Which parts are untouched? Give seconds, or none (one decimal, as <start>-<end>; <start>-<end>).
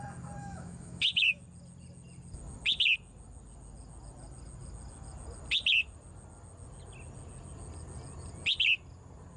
0.0-0.4; 1.4-9.4